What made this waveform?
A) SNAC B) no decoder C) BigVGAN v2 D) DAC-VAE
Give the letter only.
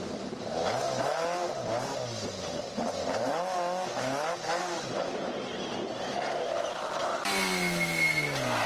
B